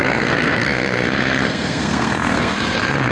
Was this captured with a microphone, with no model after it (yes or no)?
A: no